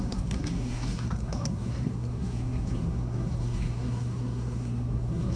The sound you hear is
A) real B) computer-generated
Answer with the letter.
B